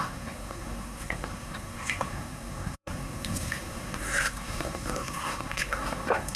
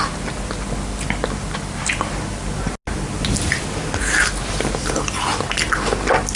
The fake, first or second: first